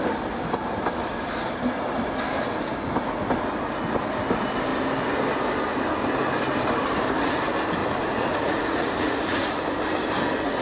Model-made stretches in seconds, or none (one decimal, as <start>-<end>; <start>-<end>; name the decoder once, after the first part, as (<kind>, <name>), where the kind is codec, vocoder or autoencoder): 7.8-9.6 (vocoder, Vocos)